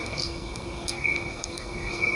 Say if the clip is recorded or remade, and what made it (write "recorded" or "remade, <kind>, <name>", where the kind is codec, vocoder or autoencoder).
remade, codec, SNAC